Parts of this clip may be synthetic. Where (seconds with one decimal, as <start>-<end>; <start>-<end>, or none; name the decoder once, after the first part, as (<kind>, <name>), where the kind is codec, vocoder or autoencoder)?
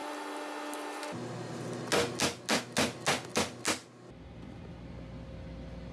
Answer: none